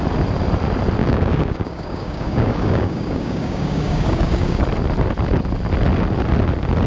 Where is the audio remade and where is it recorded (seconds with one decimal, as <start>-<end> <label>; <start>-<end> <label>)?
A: 0.0-1.0 recorded; 1.0-4.6 remade; 4.6-6.9 recorded